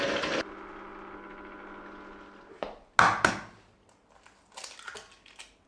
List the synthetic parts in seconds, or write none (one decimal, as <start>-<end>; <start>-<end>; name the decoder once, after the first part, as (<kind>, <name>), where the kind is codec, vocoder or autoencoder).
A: none